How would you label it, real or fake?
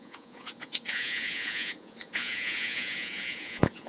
fake